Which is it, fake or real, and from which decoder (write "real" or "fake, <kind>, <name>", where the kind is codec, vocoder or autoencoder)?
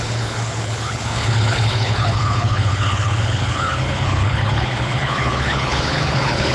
fake, codec, HILCodec